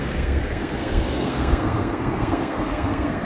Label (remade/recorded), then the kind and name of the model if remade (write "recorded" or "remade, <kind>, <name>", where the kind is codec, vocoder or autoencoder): remade, codec, SNAC